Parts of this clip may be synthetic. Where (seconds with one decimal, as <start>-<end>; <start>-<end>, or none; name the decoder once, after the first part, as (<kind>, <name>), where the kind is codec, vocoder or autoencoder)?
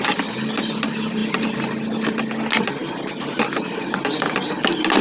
none